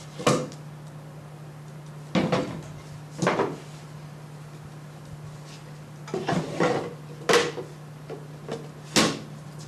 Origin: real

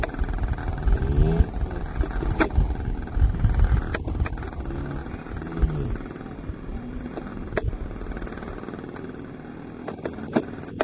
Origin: real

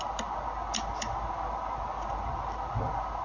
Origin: real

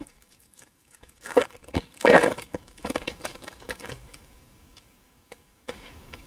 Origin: fake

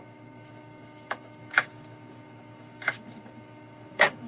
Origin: fake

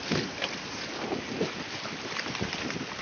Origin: real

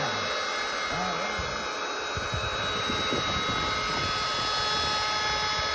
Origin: real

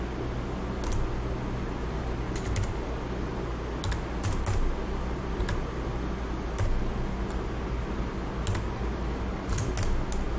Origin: real